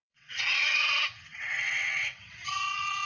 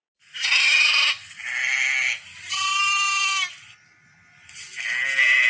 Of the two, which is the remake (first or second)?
first